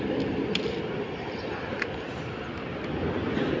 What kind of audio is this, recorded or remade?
recorded